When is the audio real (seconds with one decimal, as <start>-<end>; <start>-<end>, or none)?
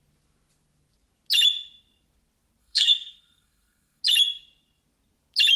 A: 0.0-2.6; 4.0-5.6